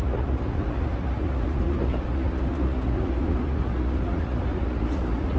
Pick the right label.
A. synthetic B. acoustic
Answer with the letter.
A